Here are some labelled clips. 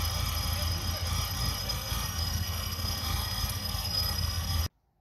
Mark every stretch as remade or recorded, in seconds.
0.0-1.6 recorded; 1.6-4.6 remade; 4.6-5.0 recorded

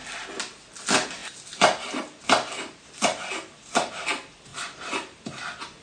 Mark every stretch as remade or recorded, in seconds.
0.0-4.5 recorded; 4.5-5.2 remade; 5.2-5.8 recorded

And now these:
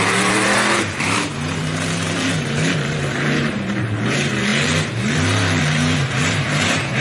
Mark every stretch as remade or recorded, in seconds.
0.0-7.0 remade

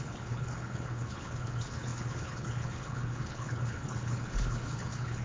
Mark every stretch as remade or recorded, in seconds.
0.0-5.2 remade

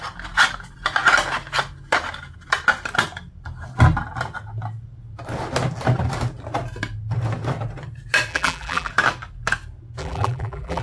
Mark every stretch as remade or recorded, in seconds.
0.0-8.3 recorded; 8.3-8.9 remade; 8.9-10.0 recorded; 10.0-10.8 remade